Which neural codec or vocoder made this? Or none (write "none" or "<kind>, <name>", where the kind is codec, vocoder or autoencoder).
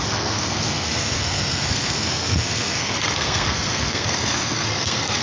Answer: codec, SNAC